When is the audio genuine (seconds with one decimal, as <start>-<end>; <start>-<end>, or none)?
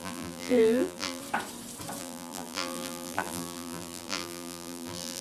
1.2-2.0